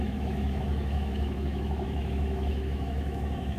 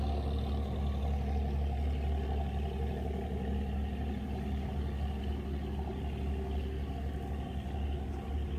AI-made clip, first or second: first